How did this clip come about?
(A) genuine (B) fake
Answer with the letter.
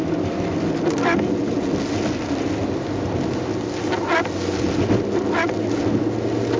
A